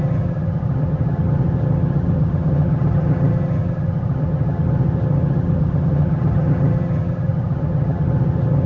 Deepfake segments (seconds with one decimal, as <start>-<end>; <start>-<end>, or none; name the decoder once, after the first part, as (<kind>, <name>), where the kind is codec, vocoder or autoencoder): 0.0-8.7 (vocoder, HiFi-GAN)